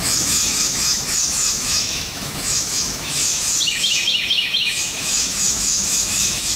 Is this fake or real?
fake